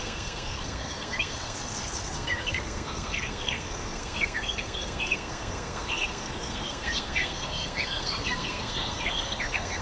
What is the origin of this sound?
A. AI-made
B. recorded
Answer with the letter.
A